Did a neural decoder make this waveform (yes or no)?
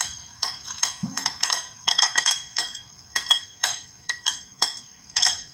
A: yes